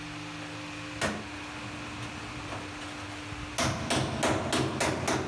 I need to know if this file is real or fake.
real